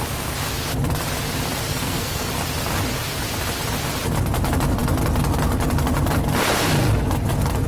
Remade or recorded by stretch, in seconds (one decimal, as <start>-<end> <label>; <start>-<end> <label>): 0.0-1.7 recorded; 1.7-2.3 remade; 2.3-7.7 recorded